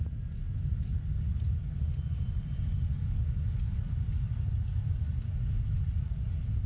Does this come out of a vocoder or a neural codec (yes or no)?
no